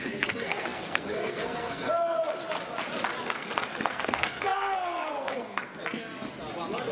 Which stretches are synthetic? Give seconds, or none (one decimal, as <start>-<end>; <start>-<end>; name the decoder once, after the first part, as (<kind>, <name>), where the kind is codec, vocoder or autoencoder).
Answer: 0.0-2.4 (codec, SNAC); 3.2-6.1